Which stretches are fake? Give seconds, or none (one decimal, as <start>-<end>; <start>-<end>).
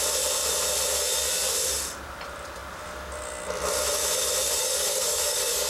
4.6-5.7